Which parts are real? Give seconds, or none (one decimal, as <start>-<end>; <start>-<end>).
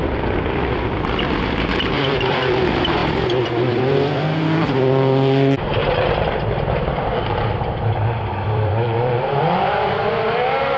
5.8-8.2